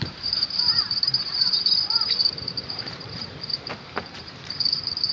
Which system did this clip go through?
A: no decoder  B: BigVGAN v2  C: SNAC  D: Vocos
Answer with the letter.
B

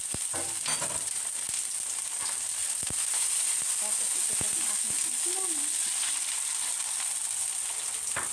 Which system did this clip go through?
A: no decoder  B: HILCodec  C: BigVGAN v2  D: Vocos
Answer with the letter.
A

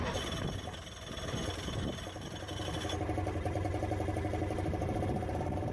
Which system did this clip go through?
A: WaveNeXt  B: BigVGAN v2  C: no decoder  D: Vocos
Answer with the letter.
C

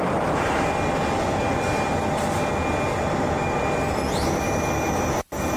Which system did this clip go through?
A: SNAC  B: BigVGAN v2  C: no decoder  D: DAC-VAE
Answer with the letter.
C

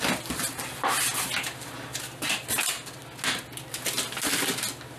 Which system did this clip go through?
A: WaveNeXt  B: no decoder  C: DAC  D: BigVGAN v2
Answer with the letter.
B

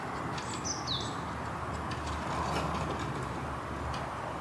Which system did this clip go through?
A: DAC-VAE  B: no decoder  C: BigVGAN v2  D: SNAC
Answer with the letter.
B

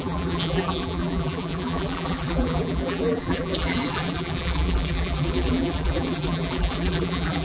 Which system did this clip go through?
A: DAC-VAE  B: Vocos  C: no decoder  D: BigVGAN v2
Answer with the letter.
D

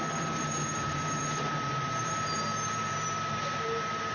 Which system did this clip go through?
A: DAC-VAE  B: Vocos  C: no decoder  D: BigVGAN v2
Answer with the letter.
D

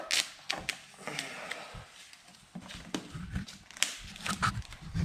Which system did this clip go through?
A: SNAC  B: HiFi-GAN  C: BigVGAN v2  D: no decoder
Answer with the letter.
D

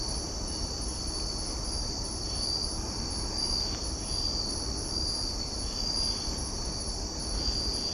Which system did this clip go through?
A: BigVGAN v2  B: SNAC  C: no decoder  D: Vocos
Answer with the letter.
A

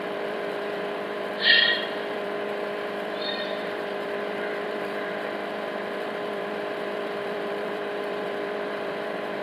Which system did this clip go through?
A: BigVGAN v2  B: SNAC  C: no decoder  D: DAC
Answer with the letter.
A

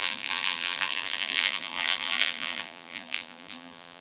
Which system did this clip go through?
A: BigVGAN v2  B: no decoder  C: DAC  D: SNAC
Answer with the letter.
A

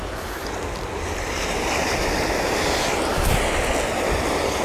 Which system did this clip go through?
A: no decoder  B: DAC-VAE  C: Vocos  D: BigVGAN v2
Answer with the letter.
A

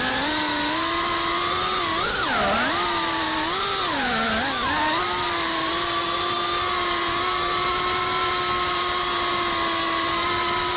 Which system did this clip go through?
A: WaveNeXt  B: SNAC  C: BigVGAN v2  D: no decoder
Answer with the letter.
D